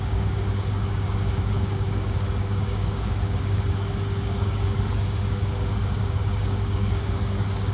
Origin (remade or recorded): remade